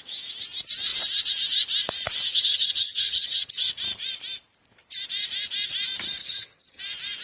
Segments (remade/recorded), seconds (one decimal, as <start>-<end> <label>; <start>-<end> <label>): 0.0-2.3 recorded; 2.3-3.7 remade; 3.7-6.2 recorded; 6.2-6.8 remade; 6.8-7.2 recorded